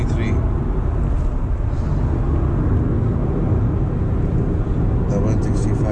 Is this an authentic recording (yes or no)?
yes